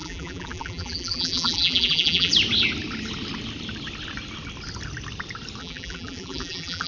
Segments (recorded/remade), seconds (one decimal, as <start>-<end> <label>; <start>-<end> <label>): 0.0-2.3 remade; 2.3-5.6 recorded; 5.6-6.9 remade